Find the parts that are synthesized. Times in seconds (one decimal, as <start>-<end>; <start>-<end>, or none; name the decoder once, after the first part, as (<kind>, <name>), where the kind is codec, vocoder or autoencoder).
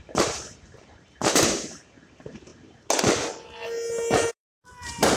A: 0.0-2.5 (vocoder, BigVGAN v2); 4.3-5.2